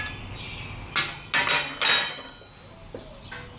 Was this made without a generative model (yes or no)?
yes